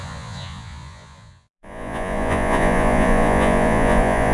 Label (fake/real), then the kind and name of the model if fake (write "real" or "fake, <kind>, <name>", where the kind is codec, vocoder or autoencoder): fake, vocoder, Vocos